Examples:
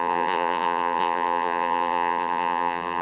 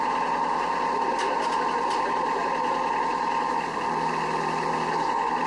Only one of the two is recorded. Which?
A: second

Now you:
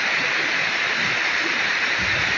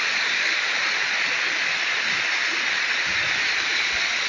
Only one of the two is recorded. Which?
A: second